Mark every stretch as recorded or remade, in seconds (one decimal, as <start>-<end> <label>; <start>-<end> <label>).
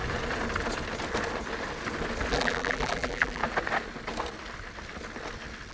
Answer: 0.0-2.3 recorded; 2.3-3.4 remade; 3.4-5.7 recorded